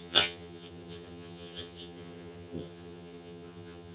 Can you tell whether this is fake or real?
fake